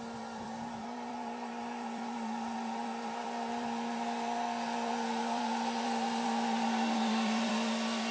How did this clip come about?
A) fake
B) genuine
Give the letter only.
A